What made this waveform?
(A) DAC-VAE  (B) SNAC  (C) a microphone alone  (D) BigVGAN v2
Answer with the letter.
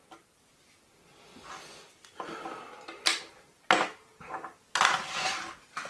C